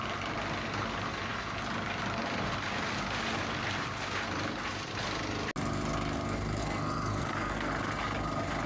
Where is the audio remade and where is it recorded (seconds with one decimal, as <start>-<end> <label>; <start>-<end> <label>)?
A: 0.0-6.6 recorded; 6.6-7.7 remade; 7.7-8.7 recorded